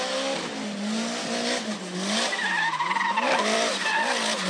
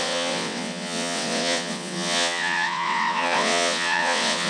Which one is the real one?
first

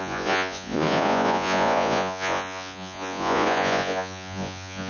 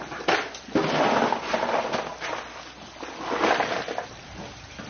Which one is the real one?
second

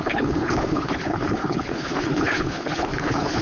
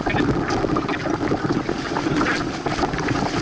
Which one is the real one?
second